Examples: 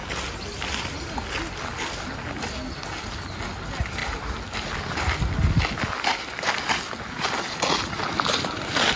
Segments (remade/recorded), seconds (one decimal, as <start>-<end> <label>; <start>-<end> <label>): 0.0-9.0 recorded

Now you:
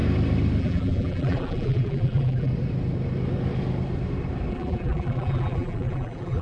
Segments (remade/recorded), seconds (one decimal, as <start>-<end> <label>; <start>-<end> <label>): 0.0-0.6 recorded; 0.6-2.5 remade; 2.5-4.5 recorded; 4.5-6.4 remade

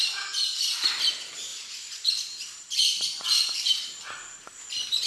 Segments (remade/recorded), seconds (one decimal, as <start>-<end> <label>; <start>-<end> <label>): 0.0-1.5 recorded; 1.5-3.7 remade; 3.7-5.1 recorded

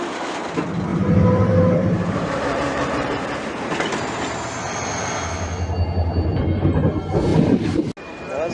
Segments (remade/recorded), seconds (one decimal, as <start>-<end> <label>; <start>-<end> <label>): 0.0-0.9 recorded; 0.9-4.5 remade; 4.5-7.3 recorded; 7.3-7.8 remade; 7.8-8.5 recorded

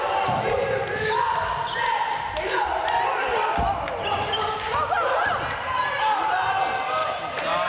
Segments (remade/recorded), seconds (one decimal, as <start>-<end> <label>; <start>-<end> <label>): 0.0-7.0 recorded; 7.0-7.7 remade